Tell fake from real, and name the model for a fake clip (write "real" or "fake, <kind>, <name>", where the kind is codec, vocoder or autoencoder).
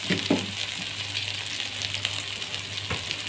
real